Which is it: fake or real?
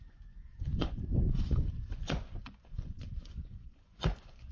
fake